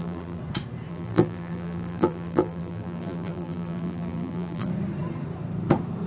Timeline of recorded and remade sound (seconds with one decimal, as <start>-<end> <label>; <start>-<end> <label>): 0.0-0.4 remade; 0.4-0.9 recorded; 0.9-4.7 remade; 4.7-6.1 recorded